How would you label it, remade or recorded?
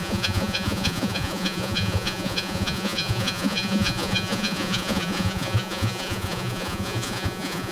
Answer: remade